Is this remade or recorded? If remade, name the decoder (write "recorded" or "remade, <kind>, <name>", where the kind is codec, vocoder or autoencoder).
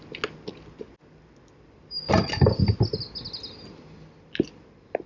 recorded